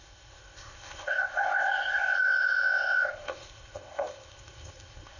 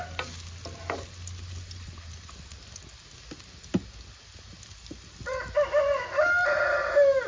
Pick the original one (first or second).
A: second